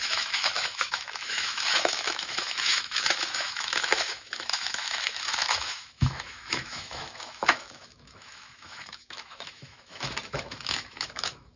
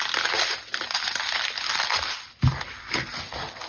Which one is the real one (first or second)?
second